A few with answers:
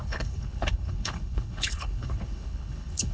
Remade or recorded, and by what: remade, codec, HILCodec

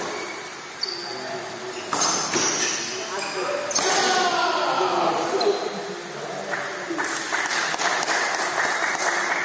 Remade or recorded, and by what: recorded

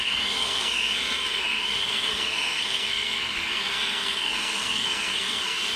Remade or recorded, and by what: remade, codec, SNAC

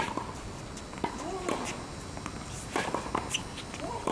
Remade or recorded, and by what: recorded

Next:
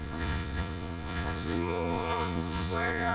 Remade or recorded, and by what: remade, vocoder, Vocos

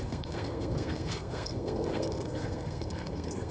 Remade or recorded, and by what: remade, codec, SNAC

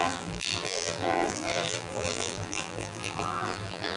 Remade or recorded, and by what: remade, vocoder, BigVGAN v2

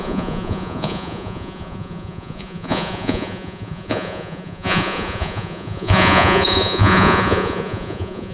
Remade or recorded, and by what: remade, vocoder, Vocos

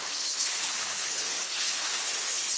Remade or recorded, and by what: remade, codec, HILCodec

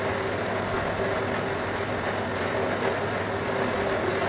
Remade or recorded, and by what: recorded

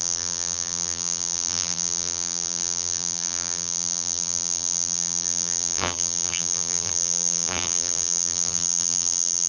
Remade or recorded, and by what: remade, vocoder, BigVGAN v2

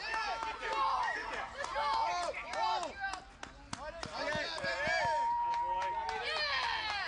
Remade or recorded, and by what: recorded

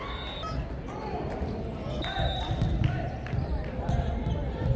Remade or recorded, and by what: recorded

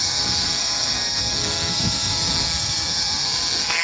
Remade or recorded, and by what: remade, codec, SNAC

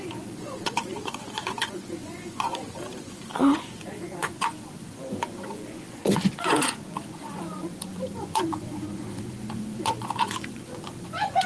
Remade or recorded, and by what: remade, vocoder, Vocos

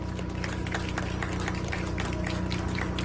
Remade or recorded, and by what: recorded